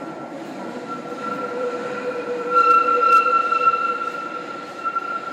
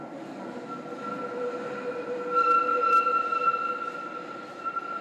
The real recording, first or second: second